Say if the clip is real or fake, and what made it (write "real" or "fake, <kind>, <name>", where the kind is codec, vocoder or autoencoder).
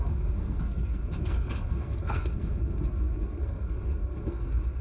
fake, codec, SNAC